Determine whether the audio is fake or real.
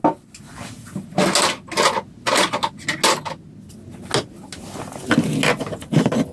real